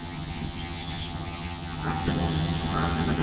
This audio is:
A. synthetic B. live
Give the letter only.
A